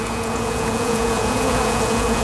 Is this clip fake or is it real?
fake